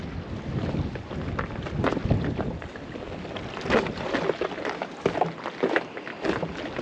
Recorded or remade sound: recorded